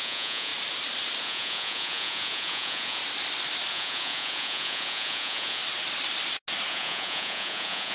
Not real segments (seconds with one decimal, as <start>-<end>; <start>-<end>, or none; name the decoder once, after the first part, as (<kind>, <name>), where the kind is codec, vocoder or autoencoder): 0.0-0.5 (vocoder, Vocos); 1.2-3.0; 3.7-5.6; 6.7-7.9